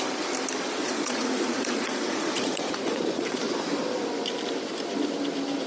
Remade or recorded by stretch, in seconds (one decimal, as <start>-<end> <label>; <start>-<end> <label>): 0.0-0.8 recorded; 0.8-3.4 remade; 3.4-5.7 recorded